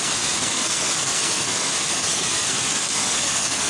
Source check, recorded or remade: remade